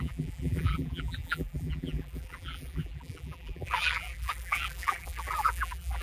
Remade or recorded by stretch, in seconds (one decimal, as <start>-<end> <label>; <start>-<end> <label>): 0.0-6.0 remade